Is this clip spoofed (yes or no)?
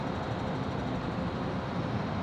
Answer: no